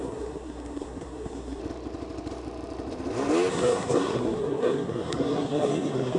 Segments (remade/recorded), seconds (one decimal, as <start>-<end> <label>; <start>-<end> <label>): 0.0-1.6 remade; 1.6-3.5 recorded; 3.5-6.2 remade